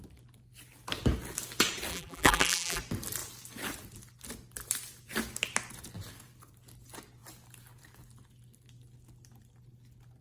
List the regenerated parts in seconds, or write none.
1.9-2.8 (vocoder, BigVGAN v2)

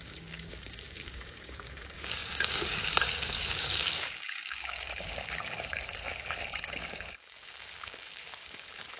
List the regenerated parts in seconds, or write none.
0.0-9.0 (codec, DAC)

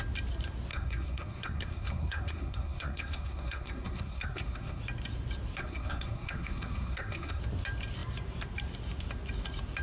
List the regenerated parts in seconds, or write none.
0.7-4.8 (codec, SNAC); 5.6-7.4

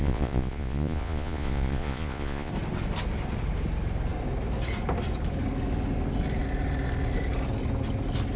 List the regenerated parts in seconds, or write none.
0.0-2.5 (vocoder, Vocos)

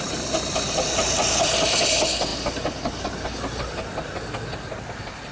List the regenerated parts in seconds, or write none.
none

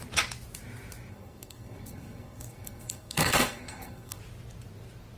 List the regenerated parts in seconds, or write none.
1.1-4.2 (codec, SNAC)

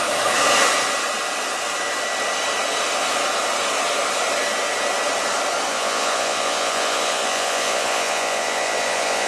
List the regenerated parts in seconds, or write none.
5.7-9.3 (vocoder, Vocos)